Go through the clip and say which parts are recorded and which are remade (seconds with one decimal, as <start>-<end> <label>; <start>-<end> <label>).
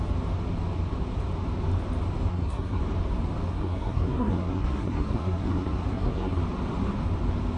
0.0-2.3 recorded; 2.3-2.8 remade; 2.8-3.5 recorded; 3.5-6.4 remade; 6.4-7.6 recorded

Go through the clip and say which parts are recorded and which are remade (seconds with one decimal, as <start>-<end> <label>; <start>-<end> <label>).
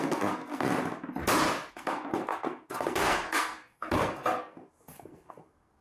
0.0-0.7 remade; 0.7-1.7 recorded; 1.7-5.8 remade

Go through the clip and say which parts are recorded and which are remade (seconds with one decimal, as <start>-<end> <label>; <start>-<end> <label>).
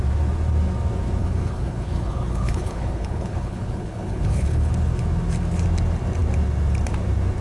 0.0-1.2 recorded; 1.2-4.7 remade; 4.7-7.4 recorded